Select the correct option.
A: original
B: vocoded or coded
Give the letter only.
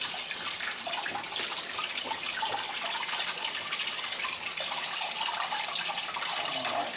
A